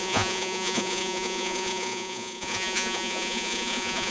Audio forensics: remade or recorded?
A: remade